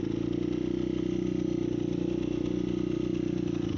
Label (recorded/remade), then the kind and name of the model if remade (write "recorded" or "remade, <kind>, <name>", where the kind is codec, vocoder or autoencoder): recorded